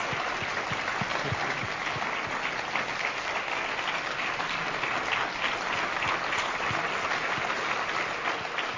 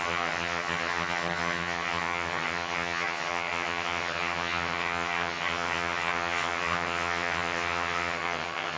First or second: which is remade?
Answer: second